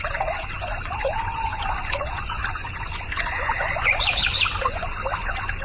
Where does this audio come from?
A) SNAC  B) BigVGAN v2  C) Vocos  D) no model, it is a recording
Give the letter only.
C